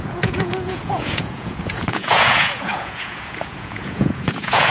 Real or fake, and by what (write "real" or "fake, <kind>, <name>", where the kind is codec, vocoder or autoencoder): fake, vocoder, Vocos